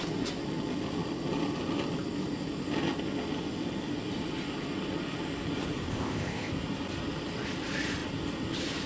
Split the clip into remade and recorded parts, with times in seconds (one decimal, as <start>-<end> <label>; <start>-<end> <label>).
0.0-5.9 recorded; 5.9-6.5 remade; 6.5-8.9 recorded